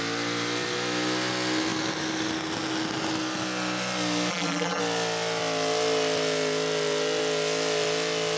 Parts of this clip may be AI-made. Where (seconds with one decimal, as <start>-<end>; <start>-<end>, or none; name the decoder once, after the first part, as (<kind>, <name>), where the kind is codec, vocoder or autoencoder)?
4.3-4.8 (vocoder, BigVGAN v2)